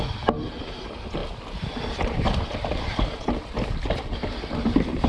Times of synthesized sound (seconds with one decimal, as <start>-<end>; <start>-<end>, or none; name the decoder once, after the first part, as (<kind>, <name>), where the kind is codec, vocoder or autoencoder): none